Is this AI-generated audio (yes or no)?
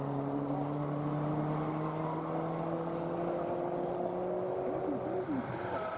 no